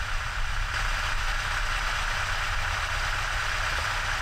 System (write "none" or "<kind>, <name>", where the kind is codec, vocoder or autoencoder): none